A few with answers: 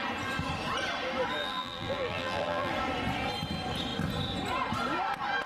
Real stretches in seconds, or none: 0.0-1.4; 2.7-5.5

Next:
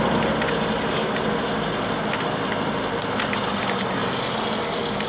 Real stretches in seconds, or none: 0.0-5.1

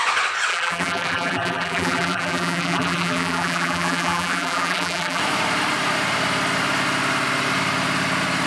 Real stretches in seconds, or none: 0.0-0.5; 5.2-8.5

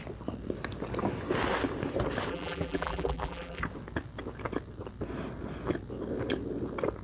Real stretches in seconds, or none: 0.0-2.3; 3.6-7.0

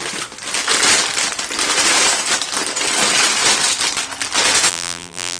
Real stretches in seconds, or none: 0.0-4.7